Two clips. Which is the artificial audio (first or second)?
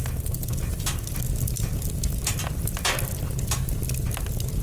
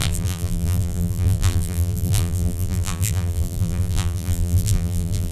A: second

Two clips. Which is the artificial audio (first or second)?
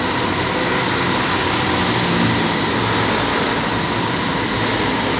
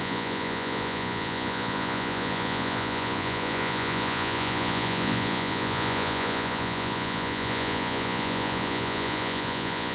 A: second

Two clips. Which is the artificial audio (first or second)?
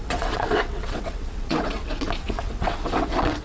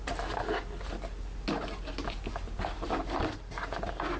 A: first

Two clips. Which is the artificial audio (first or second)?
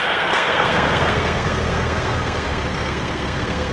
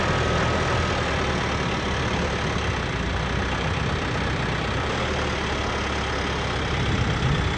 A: first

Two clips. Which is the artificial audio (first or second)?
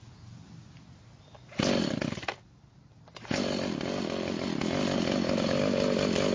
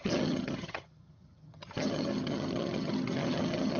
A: second